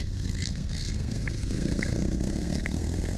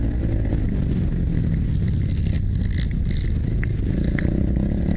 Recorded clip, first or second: second